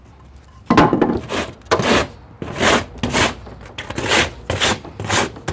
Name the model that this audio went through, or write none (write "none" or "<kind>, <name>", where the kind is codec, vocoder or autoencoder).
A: none